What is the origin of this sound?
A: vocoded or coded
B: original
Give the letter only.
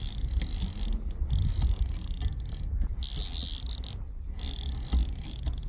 B